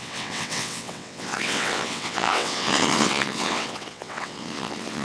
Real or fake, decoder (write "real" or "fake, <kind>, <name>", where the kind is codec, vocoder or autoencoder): fake, vocoder, WaveNeXt